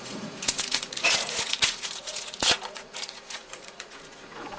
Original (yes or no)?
no